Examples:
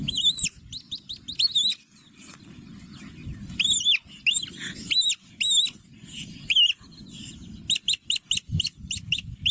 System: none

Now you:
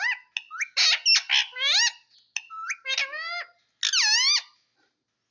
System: none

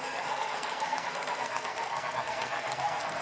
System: codec, SNAC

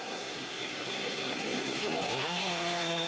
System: codec, SNAC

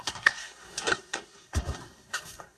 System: codec, SNAC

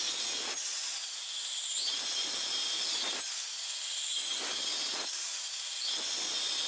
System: none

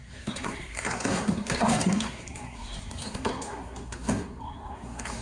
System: codec, SNAC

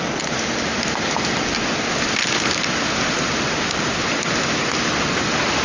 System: none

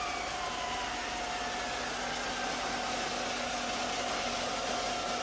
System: none